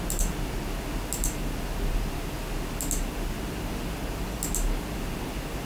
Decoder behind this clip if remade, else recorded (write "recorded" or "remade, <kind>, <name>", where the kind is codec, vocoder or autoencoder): recorded